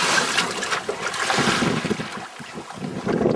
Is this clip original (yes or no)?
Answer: yes